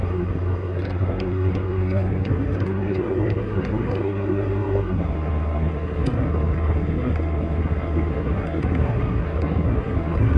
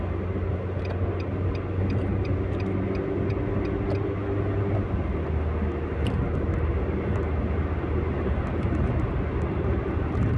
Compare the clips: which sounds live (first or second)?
second